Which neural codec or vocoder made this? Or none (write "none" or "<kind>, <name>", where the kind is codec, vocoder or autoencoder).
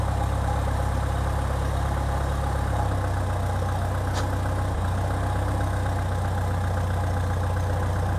none